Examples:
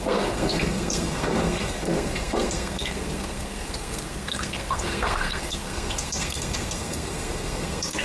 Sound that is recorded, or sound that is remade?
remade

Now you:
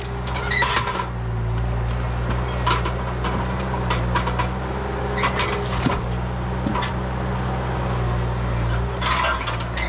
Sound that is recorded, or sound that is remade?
recorded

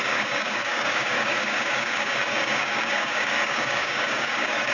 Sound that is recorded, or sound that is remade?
remade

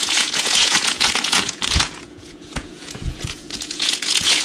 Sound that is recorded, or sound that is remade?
remade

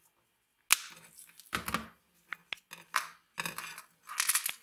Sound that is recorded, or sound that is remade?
recorded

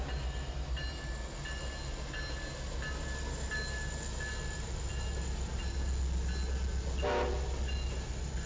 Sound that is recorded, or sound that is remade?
recorded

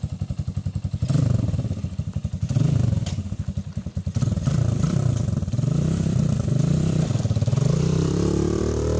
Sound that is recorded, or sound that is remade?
remade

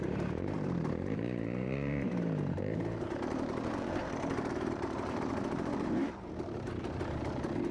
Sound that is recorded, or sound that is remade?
remade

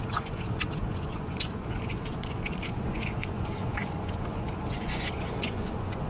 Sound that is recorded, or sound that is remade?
remade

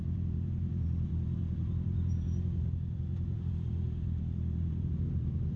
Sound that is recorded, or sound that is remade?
remade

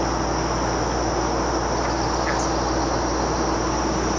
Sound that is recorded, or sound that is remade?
recorded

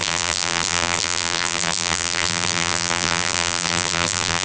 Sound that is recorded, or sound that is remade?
remade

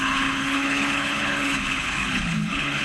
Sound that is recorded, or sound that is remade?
remade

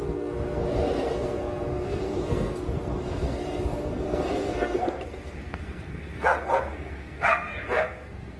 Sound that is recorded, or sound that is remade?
remade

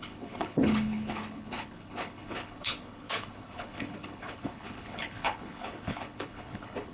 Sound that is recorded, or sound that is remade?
remade